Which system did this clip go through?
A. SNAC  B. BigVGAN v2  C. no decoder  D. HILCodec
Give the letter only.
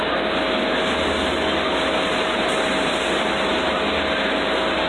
C